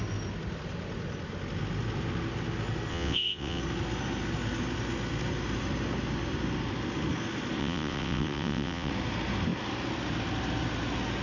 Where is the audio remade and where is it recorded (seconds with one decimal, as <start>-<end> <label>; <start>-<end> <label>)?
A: 0.0-2.9 recorded; 2.9-3.6 remade; 3.6-7.6 recorded; 7.6-8.9 remade; 8.9-11.2 recorded